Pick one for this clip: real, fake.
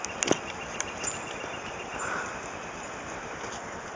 real